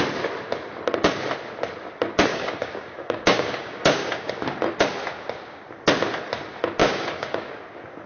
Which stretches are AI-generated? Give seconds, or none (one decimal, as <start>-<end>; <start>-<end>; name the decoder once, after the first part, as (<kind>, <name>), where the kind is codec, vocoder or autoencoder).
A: 2.3-4.3 (codec, DAC); 6.8-7.5